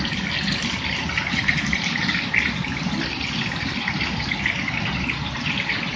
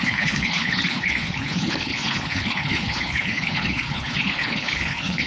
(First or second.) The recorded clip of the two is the first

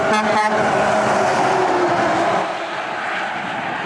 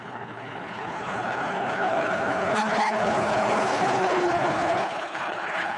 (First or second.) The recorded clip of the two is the first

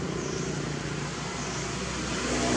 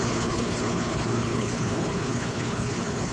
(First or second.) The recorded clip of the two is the first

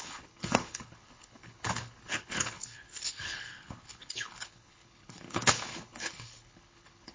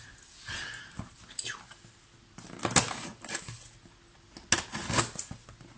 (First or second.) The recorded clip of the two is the second